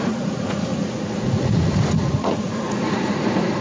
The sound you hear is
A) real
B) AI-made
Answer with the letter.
B